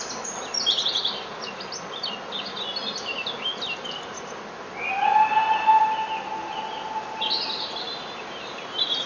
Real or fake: real